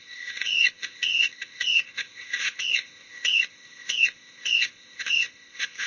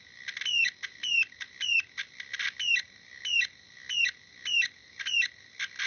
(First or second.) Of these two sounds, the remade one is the first